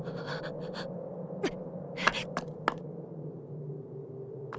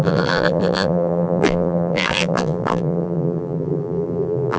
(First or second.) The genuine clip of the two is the first